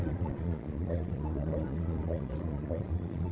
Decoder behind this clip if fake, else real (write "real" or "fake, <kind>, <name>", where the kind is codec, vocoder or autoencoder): fake, vocoder, Vocos